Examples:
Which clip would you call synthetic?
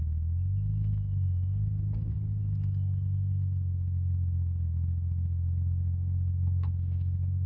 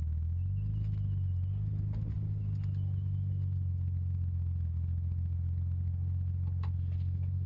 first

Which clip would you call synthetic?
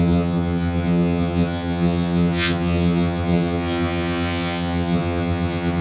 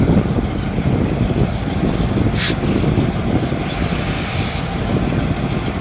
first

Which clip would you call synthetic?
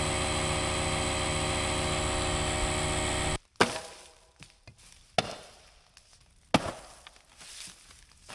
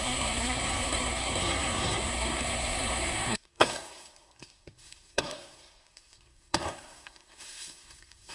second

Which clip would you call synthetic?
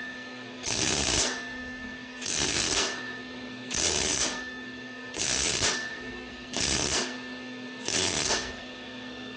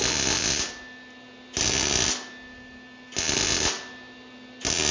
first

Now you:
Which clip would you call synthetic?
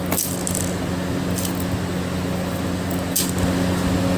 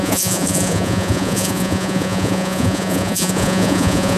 second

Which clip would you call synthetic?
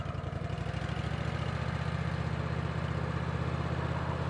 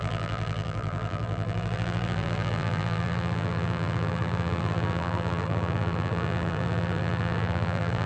second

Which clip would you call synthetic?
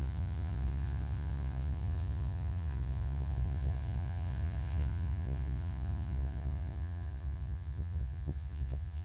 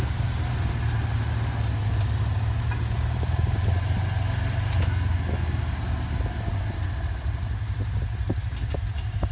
first